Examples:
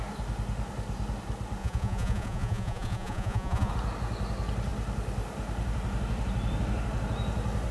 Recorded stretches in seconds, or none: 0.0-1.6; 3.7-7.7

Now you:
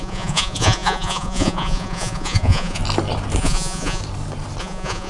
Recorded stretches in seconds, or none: 2.8-3.4; 4.0-4.6

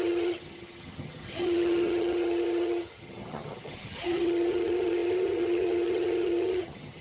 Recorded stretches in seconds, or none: none

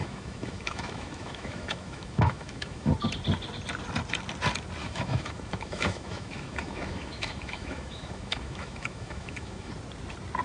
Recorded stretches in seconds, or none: 2.9-4.8; 9.7-10.4

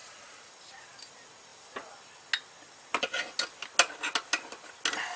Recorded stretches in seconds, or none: 0.5-5.2

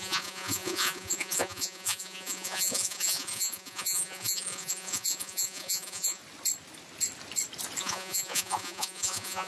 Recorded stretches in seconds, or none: 6.2-7.8

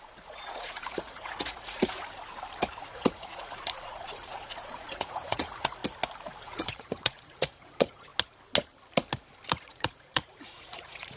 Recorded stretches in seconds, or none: 2.0-2.8; 5.8-6.4; 8.1-9.5

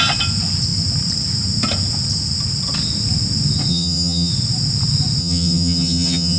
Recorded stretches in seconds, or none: 0.0-3.7; 4.3-5.2